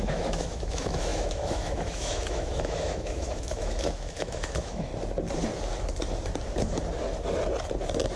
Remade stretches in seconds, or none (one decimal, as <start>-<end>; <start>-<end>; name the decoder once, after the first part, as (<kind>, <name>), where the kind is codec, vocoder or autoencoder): 0.0-4.9 (autoencoder, DAC-VAE)